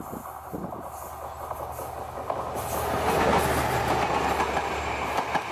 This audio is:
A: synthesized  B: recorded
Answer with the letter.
B